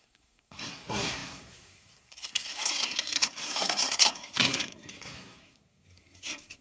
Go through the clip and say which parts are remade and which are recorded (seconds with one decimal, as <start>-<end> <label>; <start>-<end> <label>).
0.0-6.6 remade